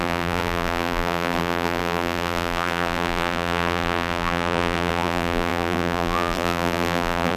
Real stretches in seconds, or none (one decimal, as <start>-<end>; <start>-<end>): none